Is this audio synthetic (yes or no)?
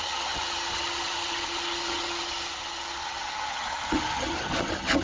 yes